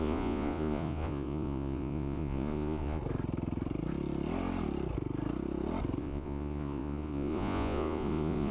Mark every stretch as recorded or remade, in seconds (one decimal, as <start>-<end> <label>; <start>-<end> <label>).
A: 0.0-3.0 remade; 3.0-6.0 recorded; 6.0-8.5 remade